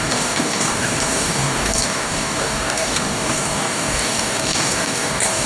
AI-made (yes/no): yes